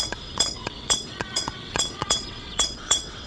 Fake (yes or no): yes